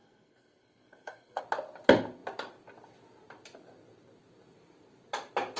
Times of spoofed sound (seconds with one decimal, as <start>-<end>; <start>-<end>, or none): 0.0-1.4